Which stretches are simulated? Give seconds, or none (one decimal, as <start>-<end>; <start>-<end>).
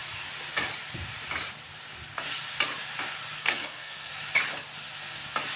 3.4-4.1